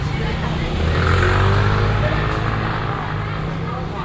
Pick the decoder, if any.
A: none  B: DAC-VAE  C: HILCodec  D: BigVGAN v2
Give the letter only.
A